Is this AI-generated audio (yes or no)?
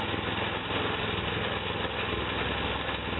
no